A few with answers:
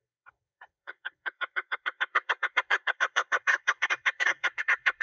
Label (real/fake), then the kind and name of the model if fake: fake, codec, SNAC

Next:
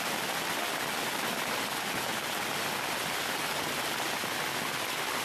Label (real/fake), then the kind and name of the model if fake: real